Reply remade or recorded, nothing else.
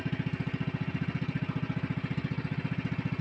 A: recorded